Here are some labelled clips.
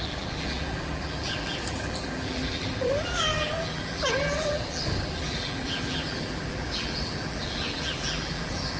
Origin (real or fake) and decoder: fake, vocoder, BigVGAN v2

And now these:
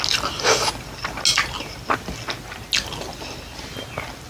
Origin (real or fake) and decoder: real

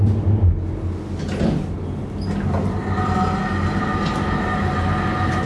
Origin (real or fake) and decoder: real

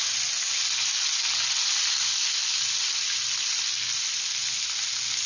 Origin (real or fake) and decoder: real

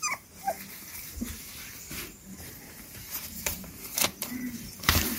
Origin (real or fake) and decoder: fake, vocoder, BigVGAN v2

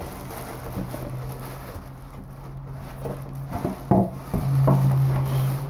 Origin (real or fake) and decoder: real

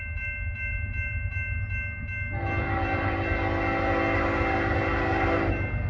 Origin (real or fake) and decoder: real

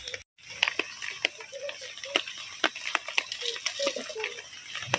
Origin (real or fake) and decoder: real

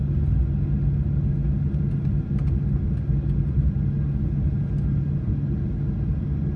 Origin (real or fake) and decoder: real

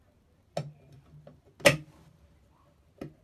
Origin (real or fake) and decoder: real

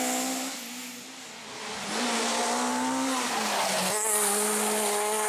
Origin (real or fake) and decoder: real